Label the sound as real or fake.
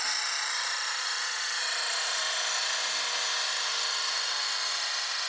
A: real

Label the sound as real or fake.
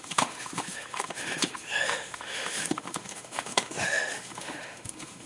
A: fake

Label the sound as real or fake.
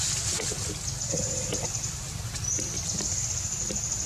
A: real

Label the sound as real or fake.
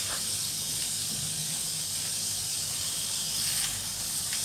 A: fake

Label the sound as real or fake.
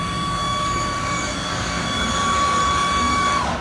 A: fake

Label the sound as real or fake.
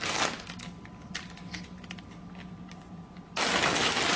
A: real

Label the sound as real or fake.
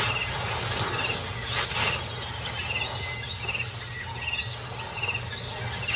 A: real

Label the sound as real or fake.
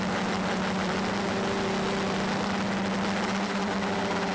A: real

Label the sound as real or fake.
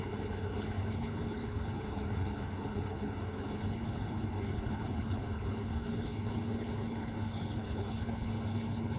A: fake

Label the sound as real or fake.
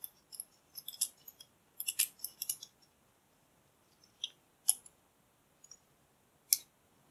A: real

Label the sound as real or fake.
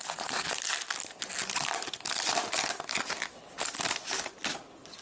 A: real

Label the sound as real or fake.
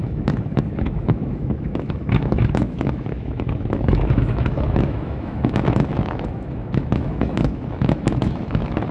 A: fake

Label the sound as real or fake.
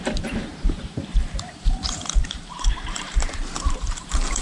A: fake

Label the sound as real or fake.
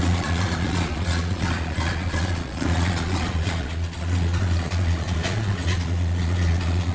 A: fake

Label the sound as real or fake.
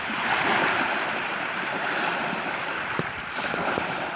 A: real